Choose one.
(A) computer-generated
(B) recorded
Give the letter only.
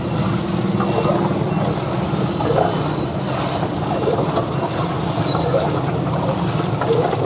B